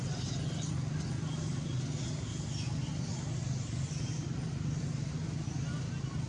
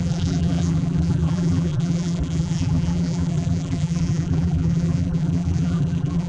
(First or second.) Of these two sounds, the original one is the first